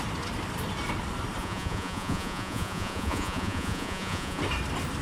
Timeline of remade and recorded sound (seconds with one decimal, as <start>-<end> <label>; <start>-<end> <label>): 0.0-1.4 recorded; 1.4-4.4 remade; 4.4-5.0 recorded